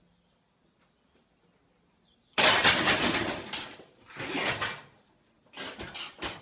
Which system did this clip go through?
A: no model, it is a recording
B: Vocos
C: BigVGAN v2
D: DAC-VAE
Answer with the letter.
A